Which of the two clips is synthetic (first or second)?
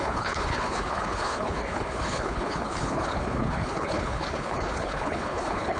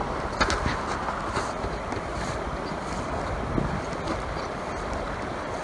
first